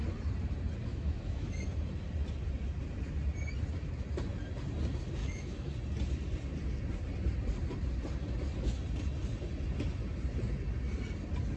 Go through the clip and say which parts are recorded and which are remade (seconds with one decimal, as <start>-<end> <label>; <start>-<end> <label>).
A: 0.0-0.9 recorded; 0.9-1.6 remade; 1.6-5.2 recorded; 5.2-5.7 remade; 5.7-11.6 recorded